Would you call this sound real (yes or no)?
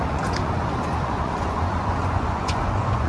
no